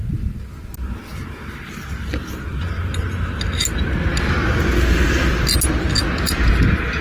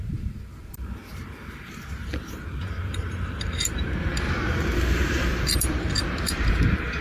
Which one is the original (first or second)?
first